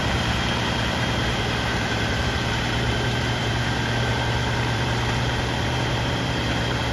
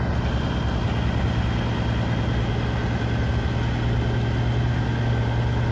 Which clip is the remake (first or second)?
first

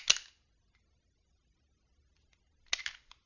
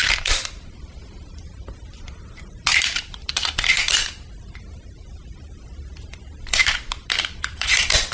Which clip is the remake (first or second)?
second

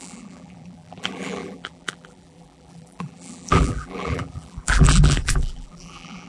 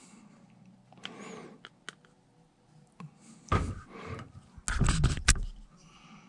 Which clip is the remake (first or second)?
first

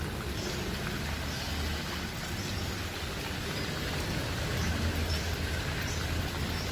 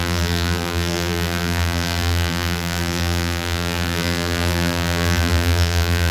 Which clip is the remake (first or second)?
second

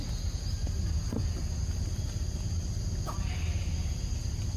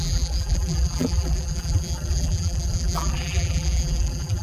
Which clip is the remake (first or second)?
second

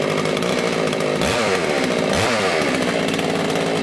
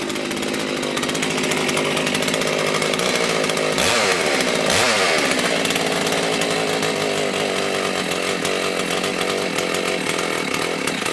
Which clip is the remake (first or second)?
first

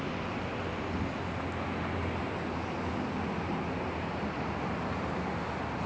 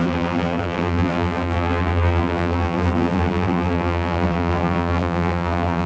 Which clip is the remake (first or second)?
second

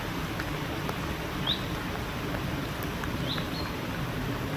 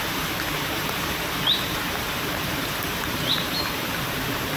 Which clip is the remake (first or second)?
second